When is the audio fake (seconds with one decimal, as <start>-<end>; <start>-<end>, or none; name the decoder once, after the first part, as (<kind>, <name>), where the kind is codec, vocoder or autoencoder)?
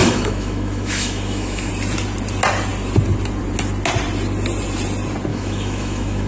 0.0-1.7 (autoencoder, DAC-VAE); 5.3-6.3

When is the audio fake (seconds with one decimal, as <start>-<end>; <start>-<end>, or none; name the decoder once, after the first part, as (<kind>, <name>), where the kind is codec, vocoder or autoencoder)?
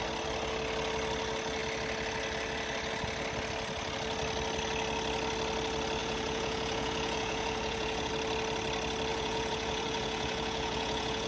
6.0-8.1 (vocoder, Vocos); 9.1-11.3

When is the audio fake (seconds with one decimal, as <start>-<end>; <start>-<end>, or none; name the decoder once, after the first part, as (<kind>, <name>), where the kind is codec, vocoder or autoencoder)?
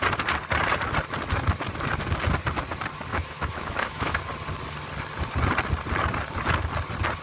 3.1-4.2 (autoencoder, DAC-VAE)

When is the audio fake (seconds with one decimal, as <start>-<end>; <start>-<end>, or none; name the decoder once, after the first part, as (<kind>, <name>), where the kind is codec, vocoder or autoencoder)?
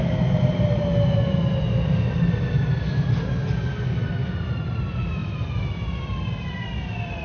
4.2-4.8 (vocoder, BigVGAN v2)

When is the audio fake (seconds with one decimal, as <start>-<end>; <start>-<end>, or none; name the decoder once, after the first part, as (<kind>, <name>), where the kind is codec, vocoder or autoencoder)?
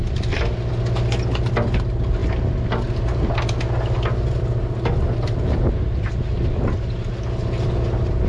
none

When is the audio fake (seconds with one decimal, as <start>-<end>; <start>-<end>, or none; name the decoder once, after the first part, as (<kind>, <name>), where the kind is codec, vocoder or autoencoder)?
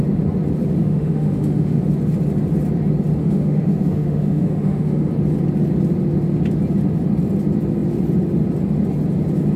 0.8-1.8 (autoencoder, DAC-VAE); 3.2-5.1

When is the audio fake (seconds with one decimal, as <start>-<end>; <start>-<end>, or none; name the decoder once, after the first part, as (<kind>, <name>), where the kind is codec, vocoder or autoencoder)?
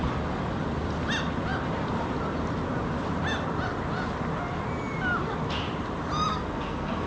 6.3-7.1 (codec, SNAC)